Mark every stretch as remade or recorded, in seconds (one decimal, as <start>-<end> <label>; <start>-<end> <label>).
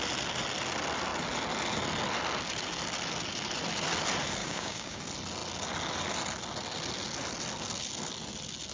0.0-4.4 recorded; 4.4-5.0 remade; 5.0-8.7 recorded